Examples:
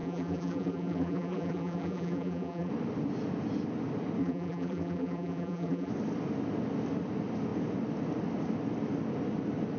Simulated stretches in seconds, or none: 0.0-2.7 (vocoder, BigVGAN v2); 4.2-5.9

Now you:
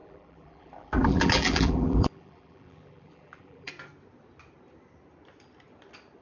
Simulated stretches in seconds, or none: 0.0-3.7 (vocoder, BigVGAN v2)

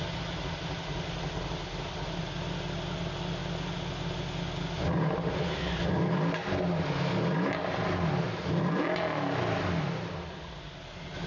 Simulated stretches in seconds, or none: none

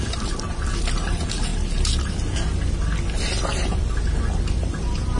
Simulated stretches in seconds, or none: 0.0-1.5 (vocoder, BigVGAN v2); 4.6-5.2

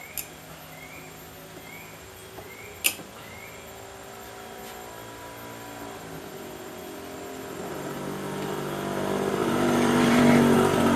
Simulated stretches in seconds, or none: 9.4-10.2 (vocoder, BigVGAN v2)

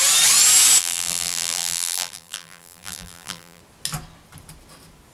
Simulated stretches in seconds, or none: 0.8-3.6 (vocoder, BigVGAN v2)

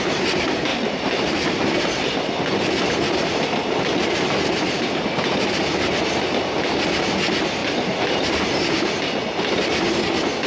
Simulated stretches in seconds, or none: 0.7-1.7 (vocoder, BigVGAN v2); 7.6-8.4